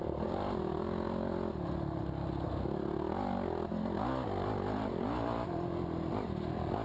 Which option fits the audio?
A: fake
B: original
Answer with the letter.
B